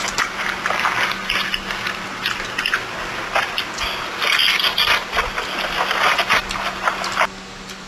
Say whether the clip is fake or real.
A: real